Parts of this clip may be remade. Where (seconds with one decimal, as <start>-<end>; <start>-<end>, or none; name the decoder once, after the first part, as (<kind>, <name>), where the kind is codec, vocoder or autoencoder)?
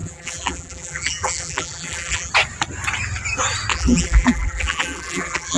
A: 0.0-2.3 (vocoder, BigVGAN v2); 3.7-5.6